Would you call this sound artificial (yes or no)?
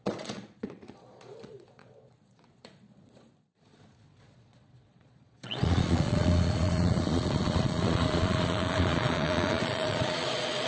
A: yes